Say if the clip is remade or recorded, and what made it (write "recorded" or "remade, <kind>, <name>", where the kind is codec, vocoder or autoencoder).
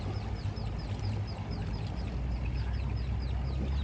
recorded